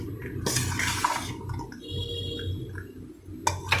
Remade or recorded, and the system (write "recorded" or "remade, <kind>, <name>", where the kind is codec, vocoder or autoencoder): recorded